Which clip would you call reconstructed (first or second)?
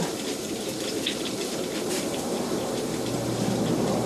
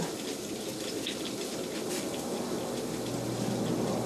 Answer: first